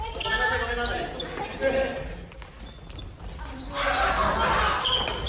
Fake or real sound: real